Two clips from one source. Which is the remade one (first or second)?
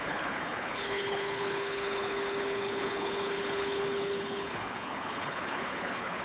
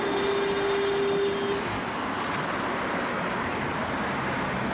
first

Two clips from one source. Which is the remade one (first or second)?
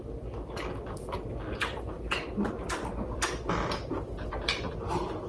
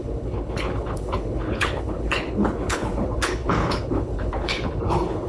second